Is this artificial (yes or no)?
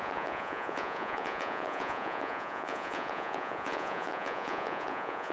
yes